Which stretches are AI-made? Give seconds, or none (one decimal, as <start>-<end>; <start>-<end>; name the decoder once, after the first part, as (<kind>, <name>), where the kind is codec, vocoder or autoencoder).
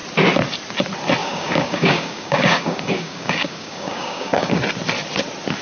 1.2-4.6 (codec, DAC)